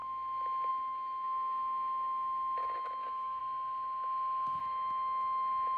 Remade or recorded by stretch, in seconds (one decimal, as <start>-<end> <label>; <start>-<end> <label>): 0.0-0.7 recorded; 0.7-3.4 remade; 3.4-4.6 recorded; 4.6-5.8 remade